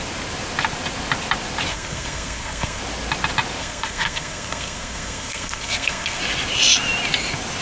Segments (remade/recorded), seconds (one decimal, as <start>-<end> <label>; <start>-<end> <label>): 0.0-1.7 recorded; 1.7-2.8 remade; 2.8-3.6 recorded; 3.6-6.2 remade; 6.2-7.6 recorded